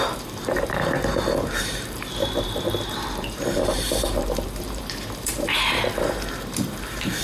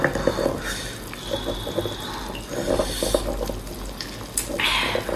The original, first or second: second